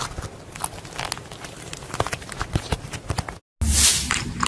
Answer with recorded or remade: recorded